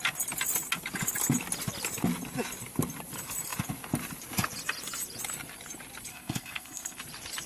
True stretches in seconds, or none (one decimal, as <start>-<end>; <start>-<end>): 0.0-6.1; 7.0-7.5